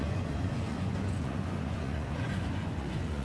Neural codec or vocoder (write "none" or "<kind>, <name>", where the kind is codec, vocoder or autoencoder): vocoder, Vocos